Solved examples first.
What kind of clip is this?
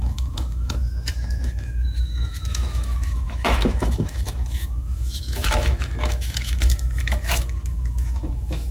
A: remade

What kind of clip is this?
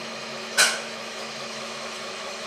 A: remade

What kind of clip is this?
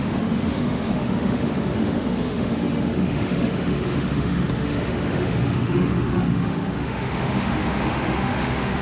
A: remade